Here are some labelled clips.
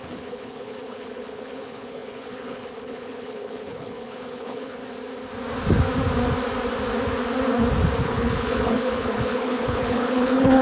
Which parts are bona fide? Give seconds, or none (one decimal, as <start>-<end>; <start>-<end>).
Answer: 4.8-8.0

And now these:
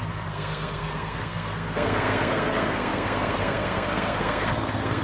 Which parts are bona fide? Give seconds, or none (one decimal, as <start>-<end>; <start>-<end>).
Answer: none

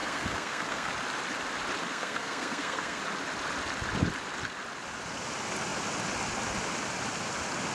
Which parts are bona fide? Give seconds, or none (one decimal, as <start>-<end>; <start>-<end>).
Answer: 0.9-1.9; 3.0-7.7

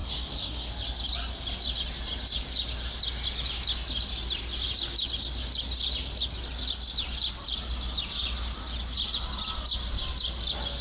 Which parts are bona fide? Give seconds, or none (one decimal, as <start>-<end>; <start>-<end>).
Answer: 0.7-10.8

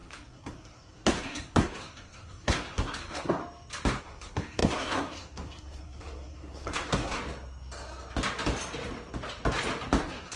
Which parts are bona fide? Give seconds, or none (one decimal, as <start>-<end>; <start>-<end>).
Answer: 3.4-4.0; 7.2-10.0